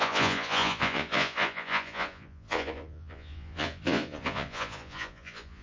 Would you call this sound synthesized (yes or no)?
yes